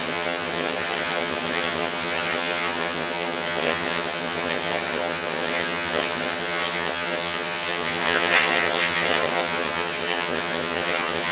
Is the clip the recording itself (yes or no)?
no